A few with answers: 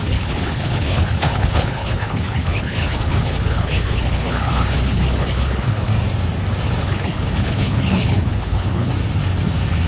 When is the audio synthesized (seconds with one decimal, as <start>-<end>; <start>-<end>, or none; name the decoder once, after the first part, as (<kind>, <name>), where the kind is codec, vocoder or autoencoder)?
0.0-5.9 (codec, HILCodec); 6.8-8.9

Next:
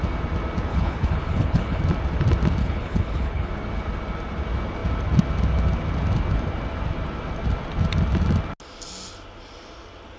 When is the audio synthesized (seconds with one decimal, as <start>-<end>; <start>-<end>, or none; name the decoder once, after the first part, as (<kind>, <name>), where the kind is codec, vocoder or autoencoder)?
0.7-1.8 (codec, HILCodec); 2.6-3.5

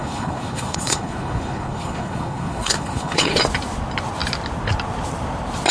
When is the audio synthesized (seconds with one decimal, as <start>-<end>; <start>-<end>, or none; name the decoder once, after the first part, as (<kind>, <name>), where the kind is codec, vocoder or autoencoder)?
0.0-3.4 (codec, HILCodec)